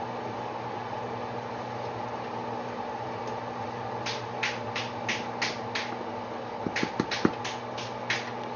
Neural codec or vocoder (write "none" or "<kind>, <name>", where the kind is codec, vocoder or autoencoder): none